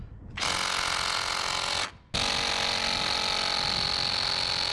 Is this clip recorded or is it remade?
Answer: recorded